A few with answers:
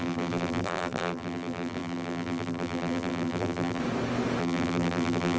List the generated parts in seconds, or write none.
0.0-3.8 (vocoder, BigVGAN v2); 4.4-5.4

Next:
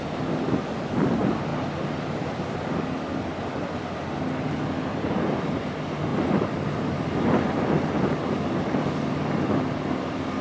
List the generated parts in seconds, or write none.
none

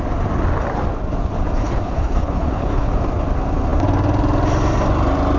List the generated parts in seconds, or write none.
1.6-2.9 (codec, HILCodec)

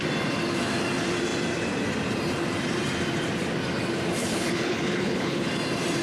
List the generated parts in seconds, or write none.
4.2-5.5 (codec, HILCodec)

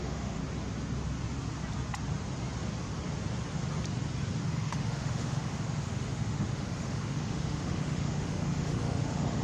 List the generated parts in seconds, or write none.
0.0-0.4 (autoencoder, DAC-VAE); 4.5-9.4

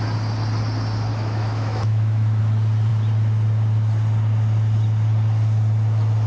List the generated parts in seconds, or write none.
1.1-2.4 (autoencoder, DAC-VAE)